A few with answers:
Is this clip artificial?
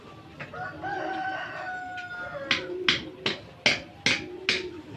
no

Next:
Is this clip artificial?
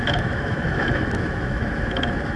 yes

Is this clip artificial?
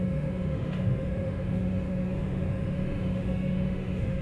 yes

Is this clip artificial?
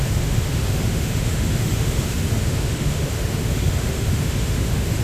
yes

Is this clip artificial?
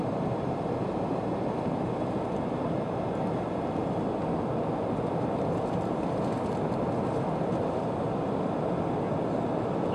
no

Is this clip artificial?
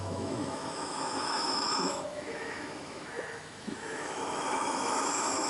yes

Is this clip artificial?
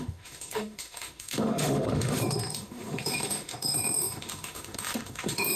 yes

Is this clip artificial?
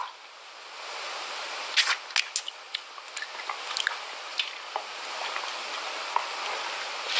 no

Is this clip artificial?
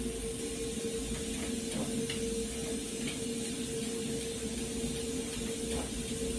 no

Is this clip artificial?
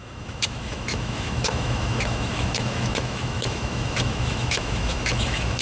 yes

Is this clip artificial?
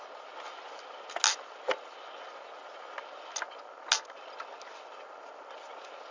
no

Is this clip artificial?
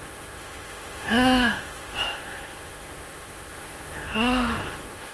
yes